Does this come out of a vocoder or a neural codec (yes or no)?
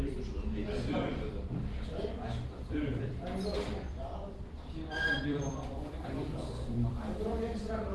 yes